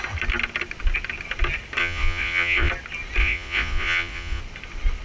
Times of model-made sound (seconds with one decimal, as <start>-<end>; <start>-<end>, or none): 1.8-2.7; 3.2-4.4